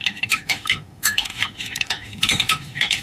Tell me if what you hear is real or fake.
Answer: fake